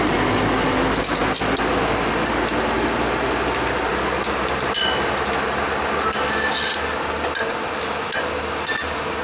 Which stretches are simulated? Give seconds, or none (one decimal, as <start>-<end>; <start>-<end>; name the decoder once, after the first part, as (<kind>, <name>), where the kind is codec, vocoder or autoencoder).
none